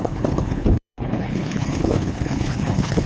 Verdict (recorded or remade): remade